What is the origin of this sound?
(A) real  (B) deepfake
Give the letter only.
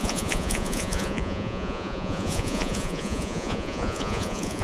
B